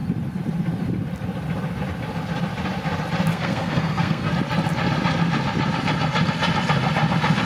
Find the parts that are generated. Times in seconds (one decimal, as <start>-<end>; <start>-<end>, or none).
3.3-4.3